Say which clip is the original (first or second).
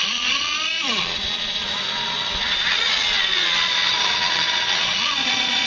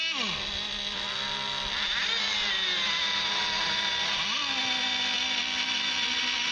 second